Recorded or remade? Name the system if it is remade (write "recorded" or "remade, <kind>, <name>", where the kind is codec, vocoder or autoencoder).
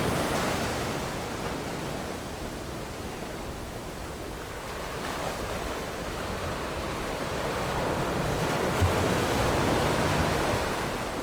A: recorded